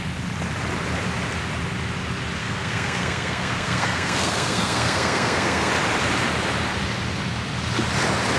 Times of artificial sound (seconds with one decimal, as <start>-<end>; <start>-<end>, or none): 2.4-5.7